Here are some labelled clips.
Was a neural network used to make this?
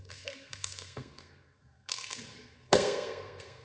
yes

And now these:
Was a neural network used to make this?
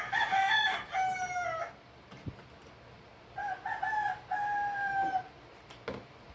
no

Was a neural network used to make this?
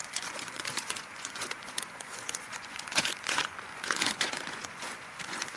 yes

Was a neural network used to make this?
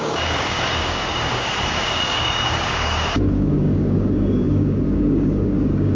yes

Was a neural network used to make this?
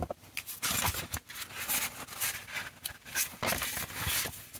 no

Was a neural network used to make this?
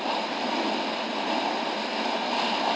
no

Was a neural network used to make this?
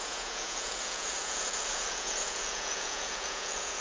yes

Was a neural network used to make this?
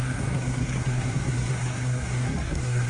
yes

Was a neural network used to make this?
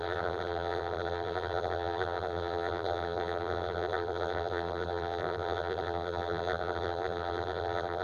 yes